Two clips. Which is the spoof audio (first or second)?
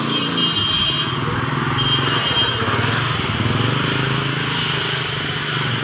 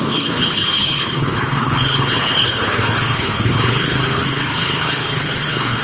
second